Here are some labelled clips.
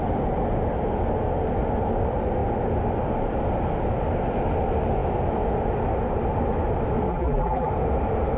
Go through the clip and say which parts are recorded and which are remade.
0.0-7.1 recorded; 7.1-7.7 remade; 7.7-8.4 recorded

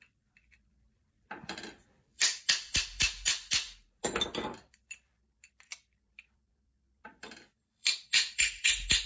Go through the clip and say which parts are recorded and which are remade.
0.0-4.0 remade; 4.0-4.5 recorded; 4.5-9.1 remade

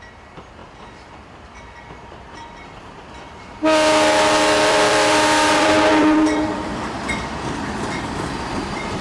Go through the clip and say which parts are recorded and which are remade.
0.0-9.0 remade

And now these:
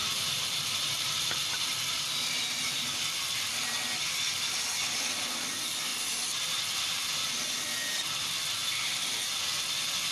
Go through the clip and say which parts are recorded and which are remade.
0.0-0.9 remade; 0.9-10.1 recorded